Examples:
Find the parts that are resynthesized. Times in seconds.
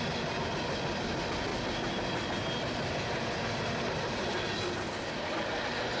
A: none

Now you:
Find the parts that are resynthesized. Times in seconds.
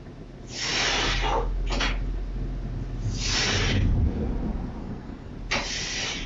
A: 4.8-5.3 (codec, SNAC)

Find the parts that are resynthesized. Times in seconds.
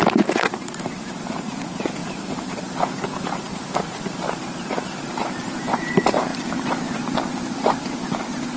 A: 0.0-6.3 (vocoder, BigVGAN v2)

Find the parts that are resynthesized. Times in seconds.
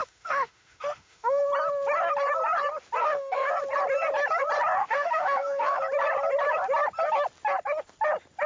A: 0.0-1.4 (autoencoder, DAC-VAE); 3.0-3.5; 4.8-5.8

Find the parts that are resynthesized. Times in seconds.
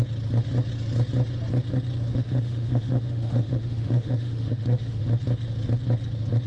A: 2.1-5.0 (autoencoder, DAC-VAE)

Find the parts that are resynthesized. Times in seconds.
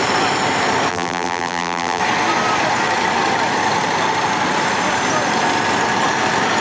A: 0.9-2.0 (vocoder, BigVGAN v2)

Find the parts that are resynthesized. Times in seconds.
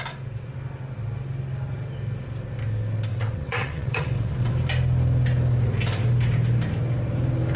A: 3.1-4.5 (vocoder, WaveNeXt)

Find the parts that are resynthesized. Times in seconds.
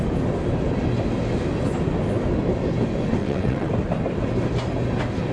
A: 3.2-3.7 (vocoder, WaveNeXt)